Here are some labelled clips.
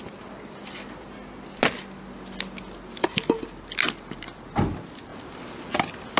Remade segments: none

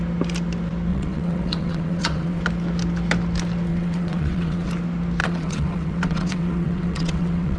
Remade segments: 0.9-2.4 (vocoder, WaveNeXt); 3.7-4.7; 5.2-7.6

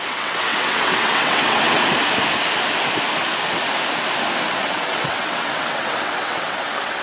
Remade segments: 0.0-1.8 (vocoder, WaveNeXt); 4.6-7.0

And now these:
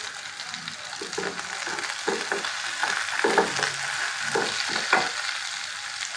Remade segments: none

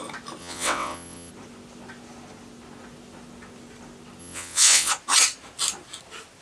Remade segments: 0.4-1.3 (vocoder, WaveNeXt); 4.2-4.9

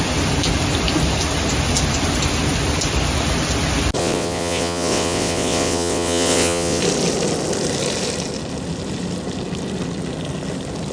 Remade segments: 4.0-6.8 (vocoder, WaveNeXt)

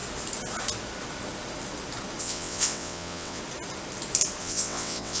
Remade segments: 2.2-3.4 (vocoder, WaveNeXt); 4.4-5.2